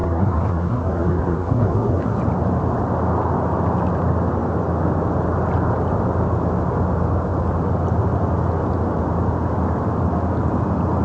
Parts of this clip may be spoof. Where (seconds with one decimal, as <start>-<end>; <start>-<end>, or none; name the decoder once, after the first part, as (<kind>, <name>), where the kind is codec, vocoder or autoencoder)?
0.0-2.2 (codec, SNAC)